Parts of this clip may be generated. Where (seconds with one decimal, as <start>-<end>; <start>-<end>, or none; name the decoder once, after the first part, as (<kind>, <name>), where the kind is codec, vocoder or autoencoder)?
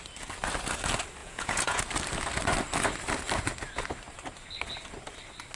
1.2-1.8 (vocoder, Vocos)